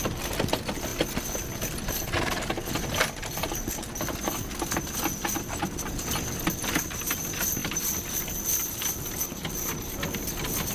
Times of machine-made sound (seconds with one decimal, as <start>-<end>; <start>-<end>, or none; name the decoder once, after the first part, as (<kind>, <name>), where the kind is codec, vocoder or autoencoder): none